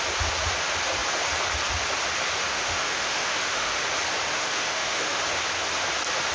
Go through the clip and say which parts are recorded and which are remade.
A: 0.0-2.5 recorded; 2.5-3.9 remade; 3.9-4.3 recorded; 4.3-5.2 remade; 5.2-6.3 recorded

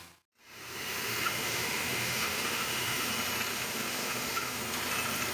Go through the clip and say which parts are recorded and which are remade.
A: 0.0-0.4 recorded; 0.4-3.1 remade; 3.1-3.5 recorded; 3.5-4.6 remade; 4.6-5.3 recorded

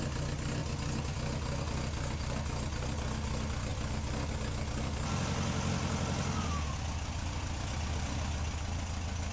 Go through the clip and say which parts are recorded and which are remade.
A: 0.0-9.3 recorded

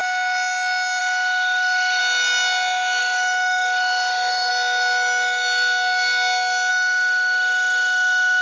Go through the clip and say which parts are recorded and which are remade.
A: 0.0-1.0 recorded; 1.0-2.0 remade; 2.0-3.0 recorded; 3.0-4.5 remade; 4.5-6.7 recorded; 6.7-8.4 remade